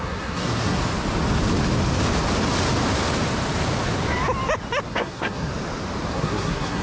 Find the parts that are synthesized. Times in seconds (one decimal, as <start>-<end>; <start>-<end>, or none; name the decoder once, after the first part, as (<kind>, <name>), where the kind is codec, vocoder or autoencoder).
0.0-0.8 (codec, SNAC); 4.9-5.5; 6.1-6.8